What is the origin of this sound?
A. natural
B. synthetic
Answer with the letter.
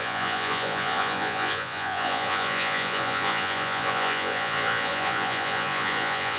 B